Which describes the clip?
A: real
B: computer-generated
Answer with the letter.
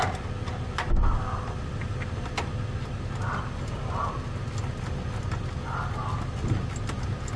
A